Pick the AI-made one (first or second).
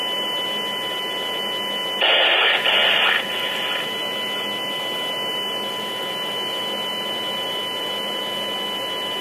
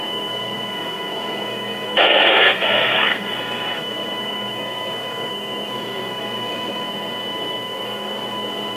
second